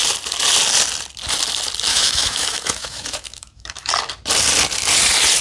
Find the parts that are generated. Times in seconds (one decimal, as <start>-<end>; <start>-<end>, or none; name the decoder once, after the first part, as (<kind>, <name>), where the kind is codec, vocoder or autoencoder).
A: 1.9-3.9 (autoencoder, DAC-VAE)